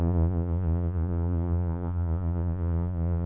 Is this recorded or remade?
remade